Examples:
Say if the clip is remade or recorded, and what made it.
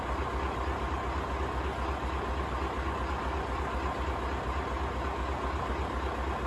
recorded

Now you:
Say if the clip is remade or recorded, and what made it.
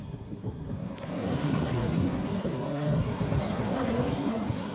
remade, codec, SNAC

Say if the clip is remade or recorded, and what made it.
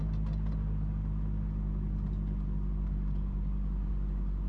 recorded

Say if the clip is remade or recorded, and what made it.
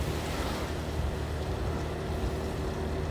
recorded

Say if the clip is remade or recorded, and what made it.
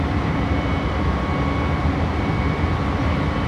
recorded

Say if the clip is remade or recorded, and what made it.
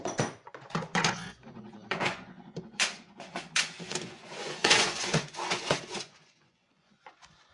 remade, vocoder, Vocos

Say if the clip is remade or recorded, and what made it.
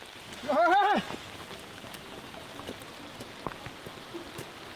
recorded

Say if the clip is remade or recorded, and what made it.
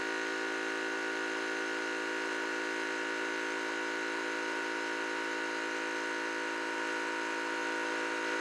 recorded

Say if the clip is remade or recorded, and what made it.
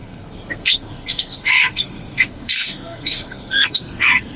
remade, codec, SNAC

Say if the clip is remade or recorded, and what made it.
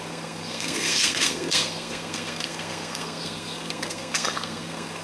remade, codec, SNAC